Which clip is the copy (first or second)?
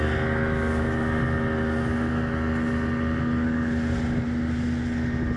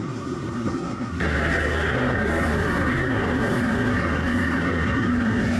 second